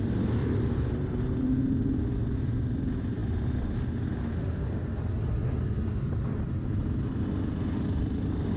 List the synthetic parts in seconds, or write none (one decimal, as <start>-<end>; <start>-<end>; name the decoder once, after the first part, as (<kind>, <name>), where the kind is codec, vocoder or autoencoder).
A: 0.4-1.4 (vocoder, BigVGAN v2)